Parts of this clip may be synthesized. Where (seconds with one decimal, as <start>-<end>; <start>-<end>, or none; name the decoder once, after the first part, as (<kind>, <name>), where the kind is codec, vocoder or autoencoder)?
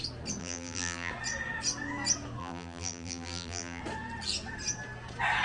0.4-1.1 (vocoder, BigVGAN v2); 2.4-3.8